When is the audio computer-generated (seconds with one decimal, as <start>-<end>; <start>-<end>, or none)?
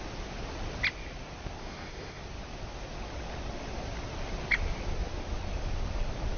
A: 1.6-2.2